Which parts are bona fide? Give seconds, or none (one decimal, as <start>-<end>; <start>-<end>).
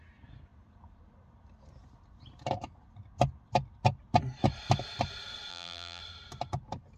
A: 0.0-5.5; 6.0-7.0